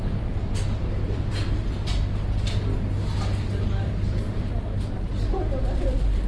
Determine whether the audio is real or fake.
fake